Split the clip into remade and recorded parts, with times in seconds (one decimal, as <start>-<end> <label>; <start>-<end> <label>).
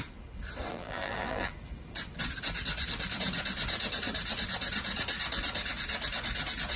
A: 0.0-0.7 recorded; 0.7-1.5 remade; 1.5-6.8 recorded